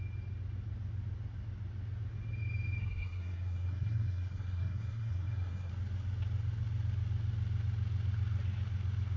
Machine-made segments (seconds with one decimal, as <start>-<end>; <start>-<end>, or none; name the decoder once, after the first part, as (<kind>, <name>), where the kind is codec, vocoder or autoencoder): 2.8-5.7 (codec, SNAC)